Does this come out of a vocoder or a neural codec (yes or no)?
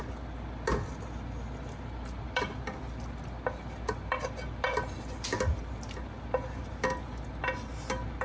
no